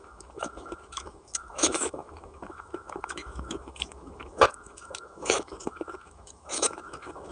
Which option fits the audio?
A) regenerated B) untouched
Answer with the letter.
A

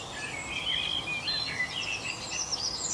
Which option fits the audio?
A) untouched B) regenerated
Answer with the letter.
A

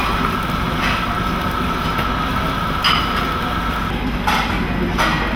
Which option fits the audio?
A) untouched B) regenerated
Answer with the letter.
A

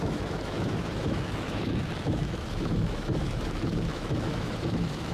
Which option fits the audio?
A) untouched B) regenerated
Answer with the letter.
B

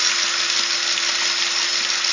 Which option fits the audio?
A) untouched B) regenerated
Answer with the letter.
A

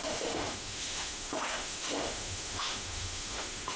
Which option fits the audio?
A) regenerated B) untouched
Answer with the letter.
A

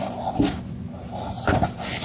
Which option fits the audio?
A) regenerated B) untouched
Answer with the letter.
B